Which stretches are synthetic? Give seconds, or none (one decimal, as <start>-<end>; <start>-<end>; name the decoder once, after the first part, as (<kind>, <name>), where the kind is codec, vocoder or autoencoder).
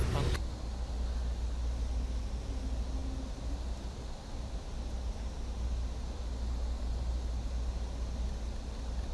none